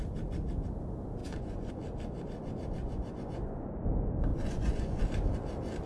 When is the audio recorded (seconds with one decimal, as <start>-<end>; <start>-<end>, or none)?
0.0-1.2; 1.7-2.8; 3.8-4.3; 5.0-5.9